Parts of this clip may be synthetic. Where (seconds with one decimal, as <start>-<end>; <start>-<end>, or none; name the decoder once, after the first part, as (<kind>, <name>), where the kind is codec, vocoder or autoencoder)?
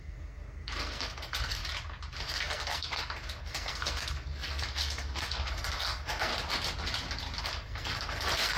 0.0-1.6 (codec, SNAC); 2.2-6.3; 7.4-8.6